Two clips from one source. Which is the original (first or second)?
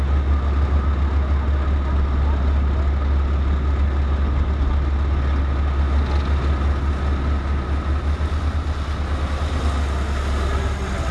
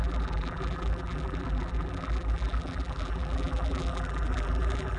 first